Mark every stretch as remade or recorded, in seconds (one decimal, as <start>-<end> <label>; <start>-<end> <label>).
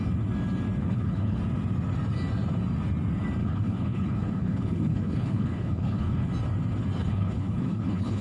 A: 0.0-0.8 recorded; 0.8-1.4 remade; 1.4-3.4 recorded; 3.4-6.3 remade; 6.3-7.0 recorded; 7.0-8.2 remade